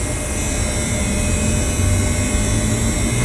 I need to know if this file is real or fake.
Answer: real